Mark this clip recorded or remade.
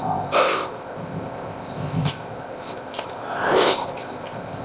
remade